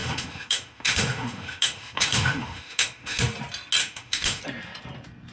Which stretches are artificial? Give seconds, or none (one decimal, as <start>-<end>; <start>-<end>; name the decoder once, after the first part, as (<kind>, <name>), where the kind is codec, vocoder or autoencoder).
0.0-3.2 (autoencoder, DAC-VAE); 3.8-4.4

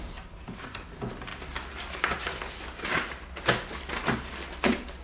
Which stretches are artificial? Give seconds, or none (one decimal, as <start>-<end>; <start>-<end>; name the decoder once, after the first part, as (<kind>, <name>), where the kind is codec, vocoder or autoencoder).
none

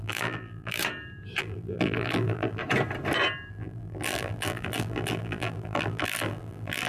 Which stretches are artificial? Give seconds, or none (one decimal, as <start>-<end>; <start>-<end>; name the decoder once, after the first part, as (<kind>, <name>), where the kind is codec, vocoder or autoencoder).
0.0-0.8 (vocoder, BigVGAN v2); 1.4-2.6; 3.5-6.9

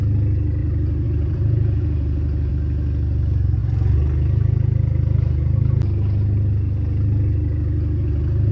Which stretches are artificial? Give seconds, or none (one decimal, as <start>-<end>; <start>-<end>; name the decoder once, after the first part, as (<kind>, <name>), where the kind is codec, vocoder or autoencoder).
0.6-2.5 (vocoder, BigVGAN v2)

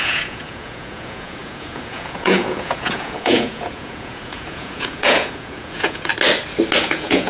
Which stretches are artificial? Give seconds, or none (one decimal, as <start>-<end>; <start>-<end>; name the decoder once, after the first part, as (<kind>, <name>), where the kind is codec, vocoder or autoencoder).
0.0-6.1 (vocoder, Vocos); 6.8-7.3

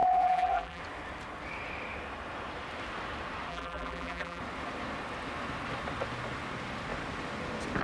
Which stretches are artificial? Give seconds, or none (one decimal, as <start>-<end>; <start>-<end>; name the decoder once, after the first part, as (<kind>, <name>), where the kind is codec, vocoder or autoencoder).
0.0-0.8 (vocoder, BigVGAN v2); 3.5-4.4

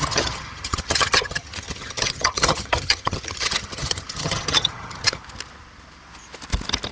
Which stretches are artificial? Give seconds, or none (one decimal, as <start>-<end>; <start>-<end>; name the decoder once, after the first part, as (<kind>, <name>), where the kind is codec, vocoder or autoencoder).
0.0-5.2 (vocoder, HiFi-GAN)